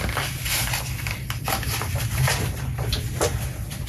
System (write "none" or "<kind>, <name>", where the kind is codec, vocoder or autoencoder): none